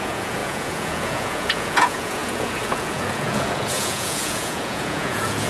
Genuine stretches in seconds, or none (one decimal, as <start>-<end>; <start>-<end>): none